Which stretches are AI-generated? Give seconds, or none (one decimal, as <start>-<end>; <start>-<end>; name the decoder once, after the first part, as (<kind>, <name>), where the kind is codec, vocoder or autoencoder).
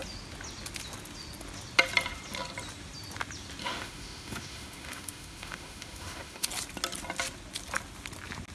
3.6-6.5 (autoencoder, DAC-VAE)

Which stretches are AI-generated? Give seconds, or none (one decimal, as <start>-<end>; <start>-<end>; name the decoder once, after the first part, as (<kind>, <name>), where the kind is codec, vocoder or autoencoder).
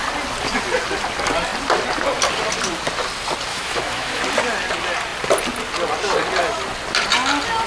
3.5-4.2 (autoencoder, DAC-VAE)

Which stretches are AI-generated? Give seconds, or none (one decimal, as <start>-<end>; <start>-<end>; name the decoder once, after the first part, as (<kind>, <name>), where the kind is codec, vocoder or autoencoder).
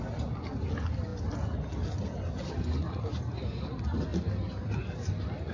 none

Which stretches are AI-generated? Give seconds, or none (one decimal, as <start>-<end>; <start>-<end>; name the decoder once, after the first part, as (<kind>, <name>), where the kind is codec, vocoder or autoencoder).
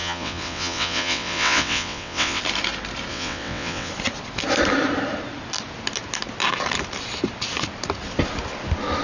0.0-2.4 (vocoder, WaveNeXt); 3.1-3.9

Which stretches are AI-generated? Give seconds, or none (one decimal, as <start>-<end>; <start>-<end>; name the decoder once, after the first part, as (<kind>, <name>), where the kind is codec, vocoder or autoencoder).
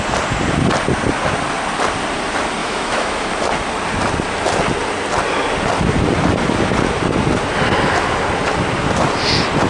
2.6-3.3 (autoencoder, DAC-VAE)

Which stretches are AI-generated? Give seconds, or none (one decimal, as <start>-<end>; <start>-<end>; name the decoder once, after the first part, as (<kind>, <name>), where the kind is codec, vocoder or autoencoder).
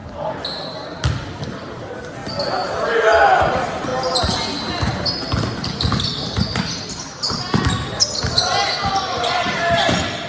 1.1-2.2 (vocoder, BigVGAN v2); 3.5-3.9; 8.9-10.3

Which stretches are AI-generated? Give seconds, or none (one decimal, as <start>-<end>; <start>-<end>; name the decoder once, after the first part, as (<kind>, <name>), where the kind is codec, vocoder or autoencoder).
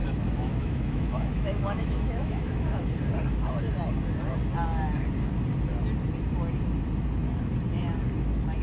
0.0-2.8 (autoencoder, DAC-VAE)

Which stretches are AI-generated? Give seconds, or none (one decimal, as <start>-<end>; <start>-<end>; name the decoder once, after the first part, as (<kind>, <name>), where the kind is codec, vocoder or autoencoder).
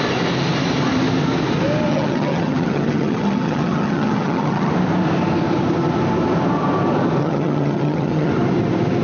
1.9-4.7 (vocoder, HiFi-GAN); 7.2-8.3